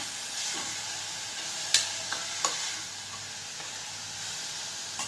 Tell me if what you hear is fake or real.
fake